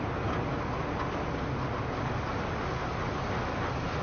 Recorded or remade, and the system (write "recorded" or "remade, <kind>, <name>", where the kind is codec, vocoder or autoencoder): recorded